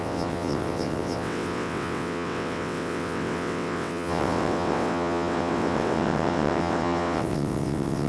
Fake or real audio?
fake